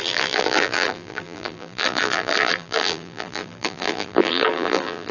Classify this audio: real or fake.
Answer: fake